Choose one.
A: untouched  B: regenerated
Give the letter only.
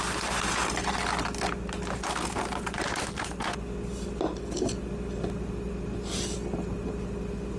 A